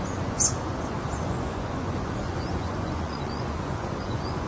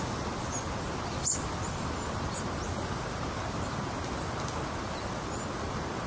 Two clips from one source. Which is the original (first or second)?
second